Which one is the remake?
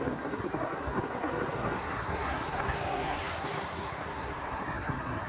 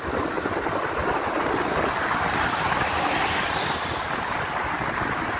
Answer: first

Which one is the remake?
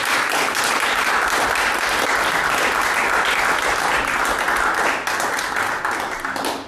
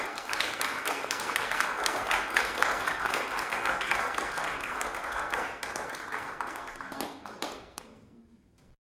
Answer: second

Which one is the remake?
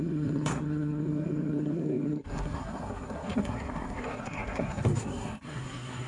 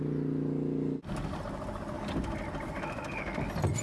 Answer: first